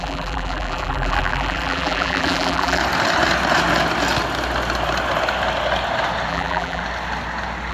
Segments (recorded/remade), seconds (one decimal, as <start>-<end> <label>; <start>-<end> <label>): 0.0-2.8 remade; 2.8-6.3 recorded; 6.3-6.8 remade; 6.8-7.7 recorded